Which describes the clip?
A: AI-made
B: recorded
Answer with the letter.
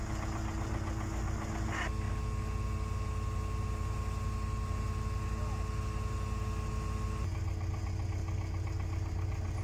B